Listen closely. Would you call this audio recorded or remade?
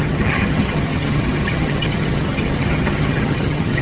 remade